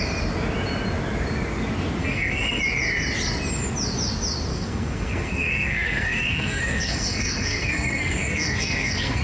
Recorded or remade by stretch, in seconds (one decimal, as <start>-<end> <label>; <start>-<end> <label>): 0.0-2.0 recorded; 2.0-2.6 remade; 2.6-4.5 recorded; 4.5-9.2 remade